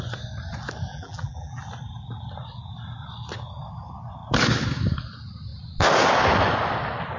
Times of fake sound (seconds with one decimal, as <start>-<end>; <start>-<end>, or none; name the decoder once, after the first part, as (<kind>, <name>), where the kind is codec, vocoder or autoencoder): 0.9-1.6 (vocoder, BigVGAN v2)